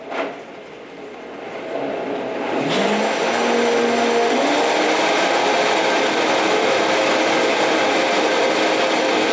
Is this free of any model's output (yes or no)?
yes